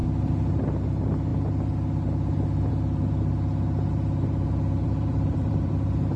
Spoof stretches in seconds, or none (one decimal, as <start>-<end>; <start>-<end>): 4.8-5.7